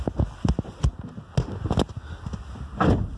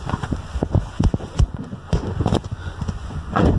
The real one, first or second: first